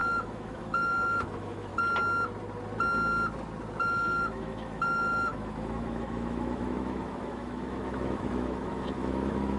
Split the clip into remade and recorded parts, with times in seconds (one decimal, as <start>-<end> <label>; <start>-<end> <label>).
0.0-1.7 remade; 1.7-3.8 recorded; 3.8-9.6 remade